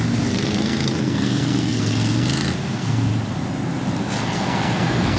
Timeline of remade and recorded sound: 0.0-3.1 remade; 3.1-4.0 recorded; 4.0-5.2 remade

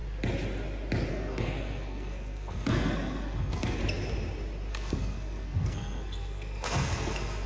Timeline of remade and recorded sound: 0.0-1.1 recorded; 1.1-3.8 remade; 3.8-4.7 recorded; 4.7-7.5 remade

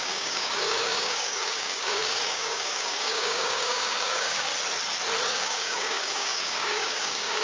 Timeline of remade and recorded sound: 0.0-4.5 remade; 4.5-5.3 recorded; 5.3-7.4 remade

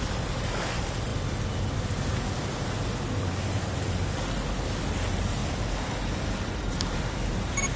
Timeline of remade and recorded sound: 0.0-1.1 remade; 1.1-4.9 recorded; 4.9-5.4 remade; 5.4-6.3 recorded; 6.3-7.8 remade

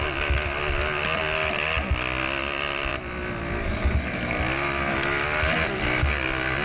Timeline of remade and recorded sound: 0.0-6.6 recorded

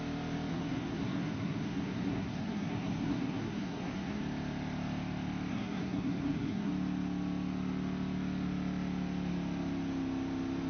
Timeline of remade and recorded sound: 0.0-0.5 recorded; 0.5-4.2 remade; 4.2-5.5 recorded; 5.5-6.7 remade; 6.7-10.7 recorded